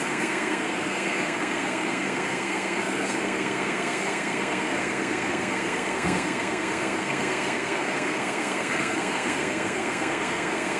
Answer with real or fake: fake